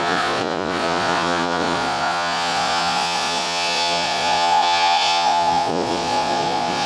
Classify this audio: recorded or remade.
remade